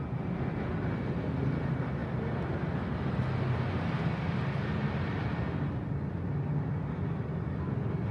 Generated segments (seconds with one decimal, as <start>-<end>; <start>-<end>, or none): none